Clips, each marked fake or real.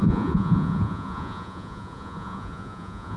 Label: fake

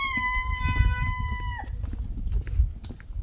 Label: real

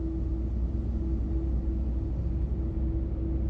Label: real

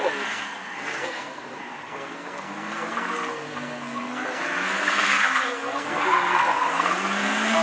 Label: fake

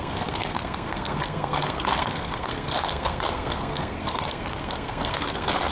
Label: fake